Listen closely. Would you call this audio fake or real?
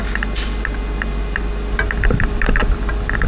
real